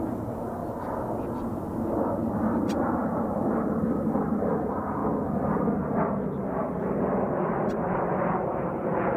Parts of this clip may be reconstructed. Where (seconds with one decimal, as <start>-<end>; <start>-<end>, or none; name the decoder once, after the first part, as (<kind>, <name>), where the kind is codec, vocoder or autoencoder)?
0.0-0.6 (vocoder, BigVGAN v2); 2.3-5.0; 6.3-9.2